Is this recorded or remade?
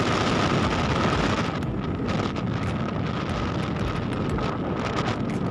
recorded